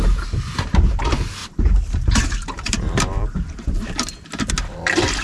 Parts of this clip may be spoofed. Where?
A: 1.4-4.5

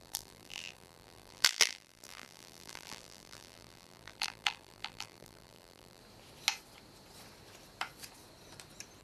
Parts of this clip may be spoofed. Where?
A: 0.0-6.0

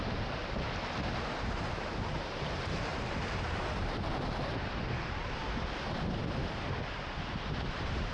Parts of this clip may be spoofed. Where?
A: 0.0-0.4; 1.5-5.4; 7.3-8.1

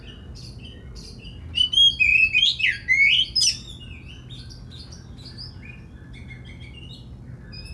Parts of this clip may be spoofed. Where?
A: none

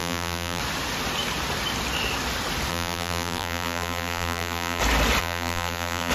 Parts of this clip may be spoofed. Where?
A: 0.0-0.6; 2.7-4.8; 5.2-6.1

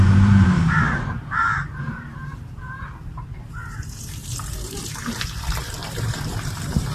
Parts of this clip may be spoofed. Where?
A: 0.0-6.9

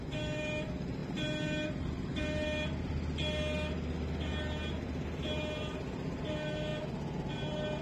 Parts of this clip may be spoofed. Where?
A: none